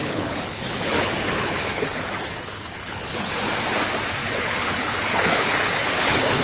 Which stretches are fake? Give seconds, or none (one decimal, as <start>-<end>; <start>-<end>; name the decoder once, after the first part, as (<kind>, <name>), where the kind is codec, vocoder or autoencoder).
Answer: 0.0-3.5 (codec, HILCodec); 4.2-6.4